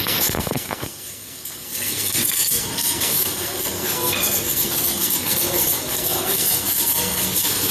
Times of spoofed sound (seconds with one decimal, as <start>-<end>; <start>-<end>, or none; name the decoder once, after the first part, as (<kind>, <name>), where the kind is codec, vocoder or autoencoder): 0.0-7.7 (codec, SNAC)